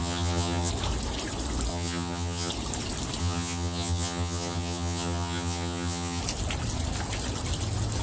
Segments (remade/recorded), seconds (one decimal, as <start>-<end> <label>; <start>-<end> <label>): 0.0-0.7 remade; 0.7-1.7 recorded; 1.7-2.5 remade; 2.5-3.2 recorded; 3.2-6.2 remade; 6.2-8.0 recorded